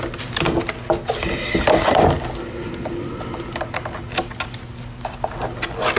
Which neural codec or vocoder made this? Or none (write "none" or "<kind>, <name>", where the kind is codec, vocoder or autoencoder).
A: none